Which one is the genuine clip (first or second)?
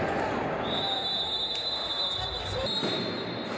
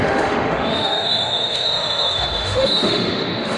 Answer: first